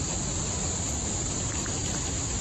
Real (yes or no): yes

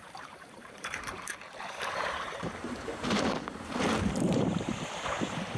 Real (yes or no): no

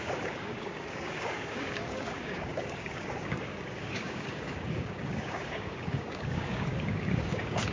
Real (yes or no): no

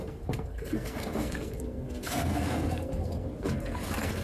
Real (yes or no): no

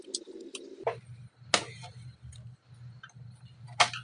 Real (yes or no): yes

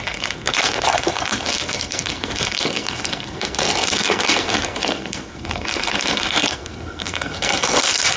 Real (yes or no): no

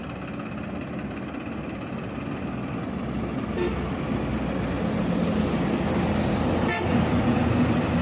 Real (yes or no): yes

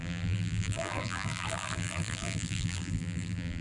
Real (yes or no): no